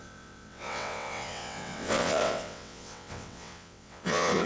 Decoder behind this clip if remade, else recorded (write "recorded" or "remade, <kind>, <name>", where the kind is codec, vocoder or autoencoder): remade, vocoder, WaveNeXt